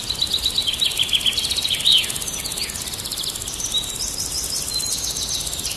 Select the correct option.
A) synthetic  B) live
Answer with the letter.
B